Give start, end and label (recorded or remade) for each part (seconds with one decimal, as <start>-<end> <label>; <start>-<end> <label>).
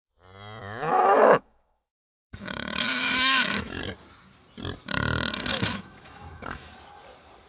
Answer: 0.0-0.6 recorded; 0.6-3.8 remade; 3.8-5.5 recorded; 5.5-6.7 remade; 6.7-7.5 recorded